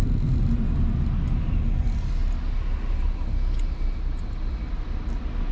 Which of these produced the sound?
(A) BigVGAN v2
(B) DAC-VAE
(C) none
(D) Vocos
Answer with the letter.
C